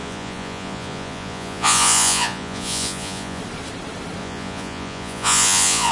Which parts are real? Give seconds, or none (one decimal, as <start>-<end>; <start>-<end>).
3.4-4.2